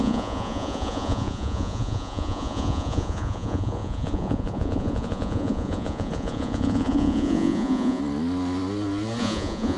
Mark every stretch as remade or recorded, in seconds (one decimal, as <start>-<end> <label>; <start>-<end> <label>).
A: 0.0-8.0 remade; 8.0-9.2 recorded; 9.2-9.8 remade